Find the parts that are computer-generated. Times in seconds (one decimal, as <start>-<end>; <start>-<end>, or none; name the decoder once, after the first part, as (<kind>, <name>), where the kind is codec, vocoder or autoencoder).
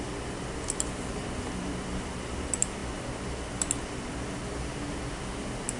none